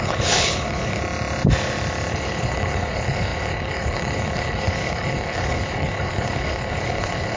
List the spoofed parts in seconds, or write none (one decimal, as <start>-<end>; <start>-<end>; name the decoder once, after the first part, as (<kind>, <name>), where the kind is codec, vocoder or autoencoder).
0.0-1.0 (codec, HILCodec); 2.1-7.4